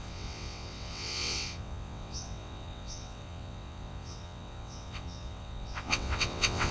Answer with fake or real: fake